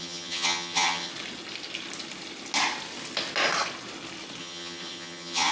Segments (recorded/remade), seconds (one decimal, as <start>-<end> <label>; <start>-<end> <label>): 0.0-1.1 remade; 1.1-4.4 recorded; 4.4-5.5 remade